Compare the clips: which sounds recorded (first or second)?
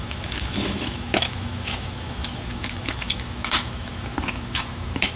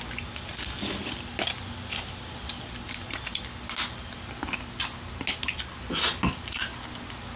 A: second